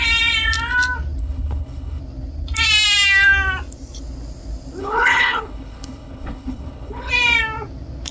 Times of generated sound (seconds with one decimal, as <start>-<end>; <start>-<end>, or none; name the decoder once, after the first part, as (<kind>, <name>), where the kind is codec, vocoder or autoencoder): 1.2-2.0 (codec, HILCodec); 4.8-7.1